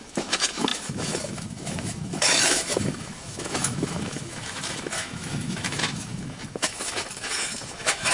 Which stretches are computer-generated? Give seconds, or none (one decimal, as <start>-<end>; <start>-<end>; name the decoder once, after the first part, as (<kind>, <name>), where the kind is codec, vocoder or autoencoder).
0.0-8.1 (autoencoder, DAC-VAE)